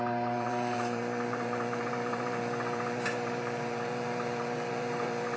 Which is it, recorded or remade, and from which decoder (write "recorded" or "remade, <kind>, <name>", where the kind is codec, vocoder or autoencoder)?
remade, vocoder, BigVGAN v2